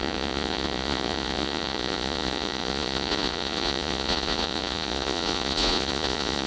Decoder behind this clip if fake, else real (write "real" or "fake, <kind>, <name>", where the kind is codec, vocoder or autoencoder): fake, vocoder, Vocos